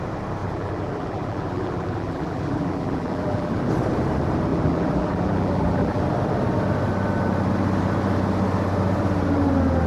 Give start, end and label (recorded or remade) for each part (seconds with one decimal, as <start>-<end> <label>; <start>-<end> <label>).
0.0-0.4 recorded; 0.4-3.7 remade; 3.7-4.5 recorded; 4.5-6.0 remade; 6.0-9.9 recorded